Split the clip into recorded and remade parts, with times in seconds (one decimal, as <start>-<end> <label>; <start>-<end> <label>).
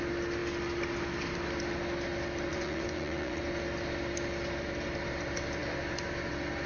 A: 0.0-2.5 recorded; 2.5-3.4 remade; 3.4-6.7 recorded